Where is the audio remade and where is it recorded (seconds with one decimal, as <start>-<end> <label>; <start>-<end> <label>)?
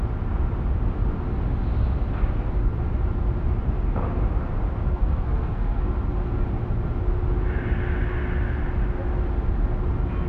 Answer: 0.0-4.9 recorded; 4.9-5.9 remade; 5.9-10.3 recorded